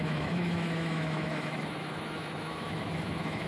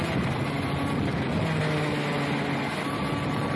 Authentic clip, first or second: second